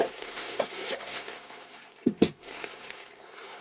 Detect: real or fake fake